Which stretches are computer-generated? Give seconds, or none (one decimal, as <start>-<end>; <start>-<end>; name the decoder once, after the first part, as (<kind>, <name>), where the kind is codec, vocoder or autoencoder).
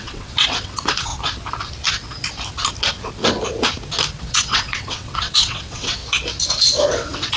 0.0-1.1 (vocoder, WaveNeXt); 4.2-6.0; 6.9-7.4